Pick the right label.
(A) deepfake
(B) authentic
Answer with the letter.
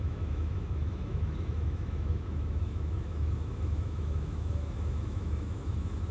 A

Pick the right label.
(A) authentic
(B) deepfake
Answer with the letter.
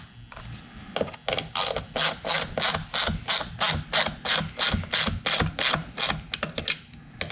A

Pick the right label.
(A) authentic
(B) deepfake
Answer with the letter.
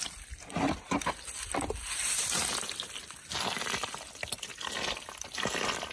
A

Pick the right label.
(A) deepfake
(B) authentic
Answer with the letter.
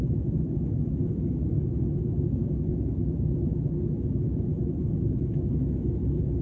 A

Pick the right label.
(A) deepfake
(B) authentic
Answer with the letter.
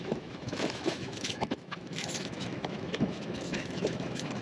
A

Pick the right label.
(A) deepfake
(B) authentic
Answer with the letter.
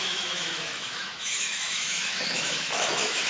A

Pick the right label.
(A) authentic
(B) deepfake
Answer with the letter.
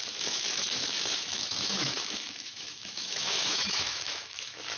B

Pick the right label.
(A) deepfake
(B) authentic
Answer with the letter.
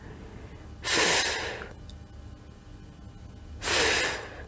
B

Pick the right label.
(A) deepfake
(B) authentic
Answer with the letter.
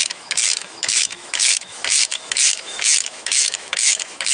A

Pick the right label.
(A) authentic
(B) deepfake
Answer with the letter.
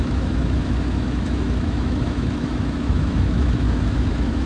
B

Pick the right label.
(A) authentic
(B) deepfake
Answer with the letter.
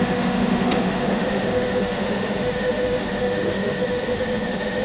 B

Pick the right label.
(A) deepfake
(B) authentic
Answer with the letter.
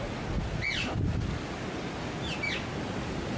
B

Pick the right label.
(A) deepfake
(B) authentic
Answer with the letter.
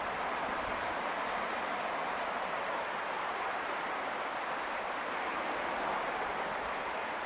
B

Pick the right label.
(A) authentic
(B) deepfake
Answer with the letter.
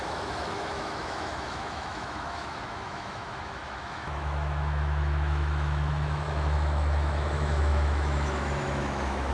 B